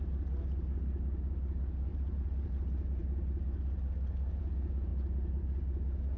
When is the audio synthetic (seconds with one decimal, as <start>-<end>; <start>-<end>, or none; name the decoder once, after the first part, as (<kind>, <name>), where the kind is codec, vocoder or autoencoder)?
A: 1.9-2.5 (vocoder, BigVGAN v2)